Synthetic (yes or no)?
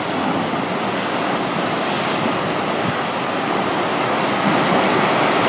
no